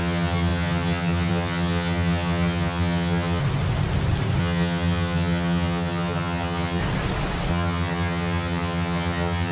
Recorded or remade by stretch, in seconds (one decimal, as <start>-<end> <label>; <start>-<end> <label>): 0.0-3.4 remade; 3.4-4.4 recorded; 4.4-6.8 remade; 6.8-7.5 recorded; 7.5-9.5 remade